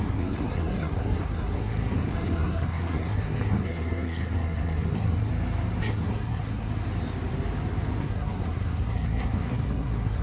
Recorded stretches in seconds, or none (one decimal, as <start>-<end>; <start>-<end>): 5.3-5.8; 6.7-8.0